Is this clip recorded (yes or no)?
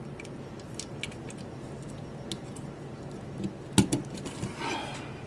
yes